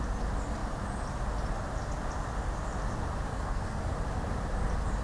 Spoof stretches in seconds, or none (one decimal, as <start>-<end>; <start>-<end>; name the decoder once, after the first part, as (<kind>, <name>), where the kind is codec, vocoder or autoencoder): 3.3-3.8 (codec, SNAC)